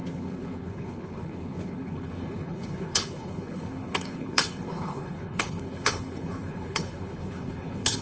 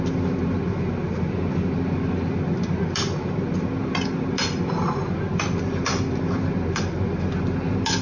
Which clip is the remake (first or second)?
first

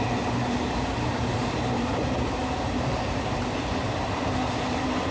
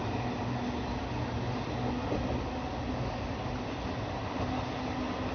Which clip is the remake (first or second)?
first